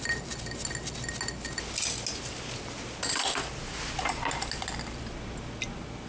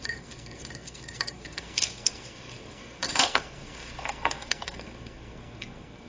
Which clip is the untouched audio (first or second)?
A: first